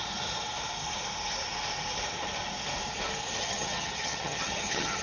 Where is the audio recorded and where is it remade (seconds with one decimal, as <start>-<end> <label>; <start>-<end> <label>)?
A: 0.0-3.4 recorded; 3.4-5.0 remade